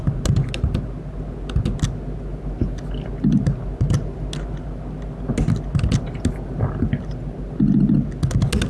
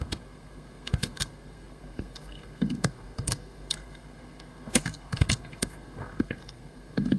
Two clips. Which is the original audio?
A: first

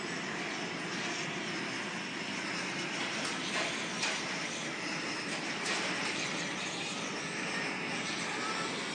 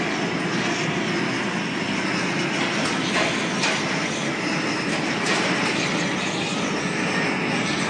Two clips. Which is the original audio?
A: second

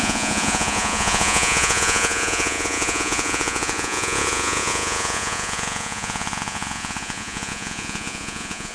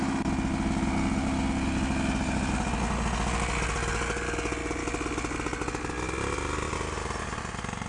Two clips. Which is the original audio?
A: second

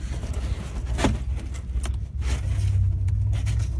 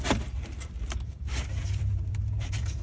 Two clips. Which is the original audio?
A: first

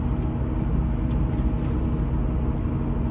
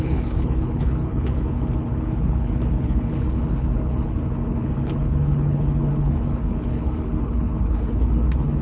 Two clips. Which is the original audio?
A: first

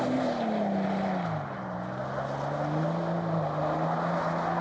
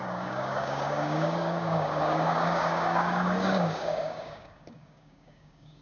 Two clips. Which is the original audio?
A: first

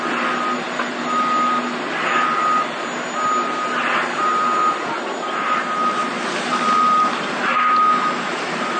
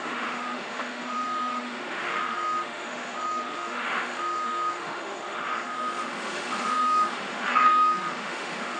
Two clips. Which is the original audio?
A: first